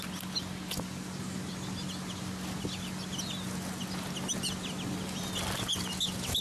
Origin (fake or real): real